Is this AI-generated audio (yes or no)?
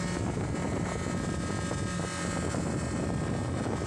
no